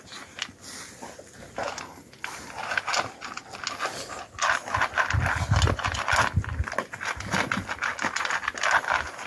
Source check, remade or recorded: recorded